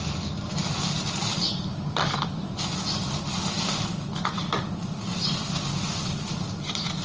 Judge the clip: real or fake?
fake